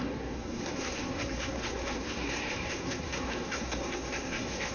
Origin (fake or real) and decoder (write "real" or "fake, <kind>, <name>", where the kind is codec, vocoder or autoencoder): fake, codec, SNAC